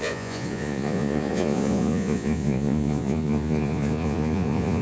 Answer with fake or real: fake